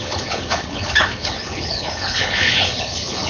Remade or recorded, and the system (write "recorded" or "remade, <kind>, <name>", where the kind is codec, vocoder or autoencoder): remade, codec, HILCodec